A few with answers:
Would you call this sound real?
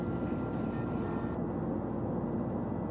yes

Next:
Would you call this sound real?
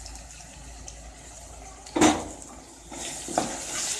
yes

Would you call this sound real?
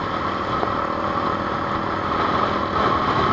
yes